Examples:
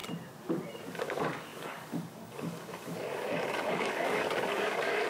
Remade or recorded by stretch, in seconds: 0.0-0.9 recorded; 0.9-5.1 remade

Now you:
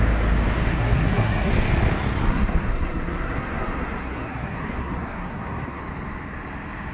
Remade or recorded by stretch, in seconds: 0.0-0.7 recorded; 0.7-1.5 remade; 1.5-2.3 recorded; 2.3-5.8 remade; 5.8-6.9 recorded

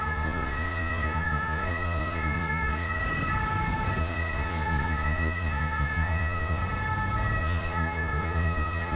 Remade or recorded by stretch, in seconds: 0.0-3.0 remade; 3.0-4.0 recorded; 4.0-6.6 remade; 6.6-7.4 recorded; 7.4-9.0 remade

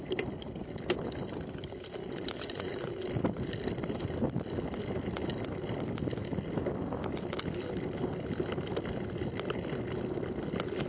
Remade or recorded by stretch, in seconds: 0.0-2.0 recorded; 2.0-2.9 remade; 2.9-10.9 recorded

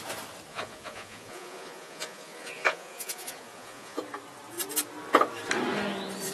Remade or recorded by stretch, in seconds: 0.0-0.5 recorded; 0.5-4.0 remade; 4.0-6.3 recorded

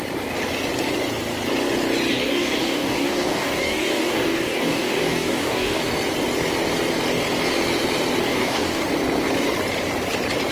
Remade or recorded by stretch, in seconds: 0.0-2.1 recorded; 2.1-5.8 remade; 5.8-8.2 recorded; 8.2-8.8 remade; 8.8-10.5 recorded